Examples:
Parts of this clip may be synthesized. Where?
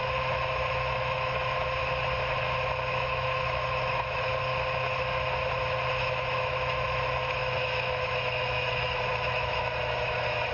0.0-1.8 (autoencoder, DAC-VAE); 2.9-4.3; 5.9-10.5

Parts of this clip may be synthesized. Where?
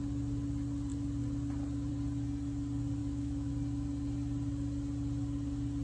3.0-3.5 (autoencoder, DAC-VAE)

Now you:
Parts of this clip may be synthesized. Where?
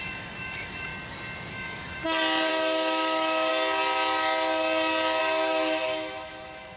0.0-0.9 (autoencoder, DAC-VAE); 1.5-2.0; 2.5-3.5; 5.2-6.8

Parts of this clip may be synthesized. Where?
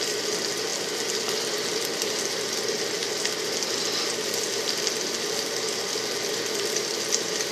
none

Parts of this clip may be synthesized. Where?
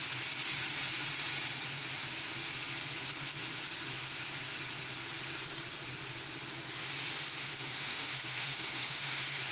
7.4-9.5 (autoencoder, DAC-VAE)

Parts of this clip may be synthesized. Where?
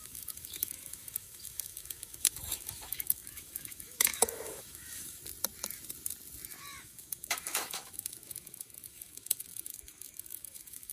0.0-5.2 (autoencoder, DAC-VAE); 6.8-10.9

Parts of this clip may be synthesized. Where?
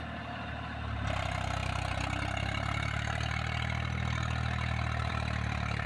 none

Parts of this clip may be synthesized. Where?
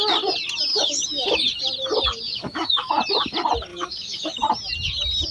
0.7-1.6 (autoencoder, DAC-VAE); 2.3-2.9; 3.7-4.4